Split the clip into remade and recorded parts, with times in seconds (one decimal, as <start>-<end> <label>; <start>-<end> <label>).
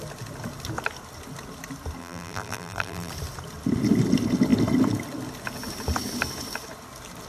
0.0-2.0 recorded; 2.0-3.1 remade; 3.1-7.3 recorded